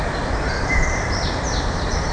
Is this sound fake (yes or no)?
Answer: yes